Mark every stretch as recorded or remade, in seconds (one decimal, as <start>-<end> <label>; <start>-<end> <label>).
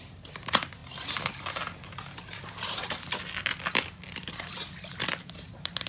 0.0-5.9 recorded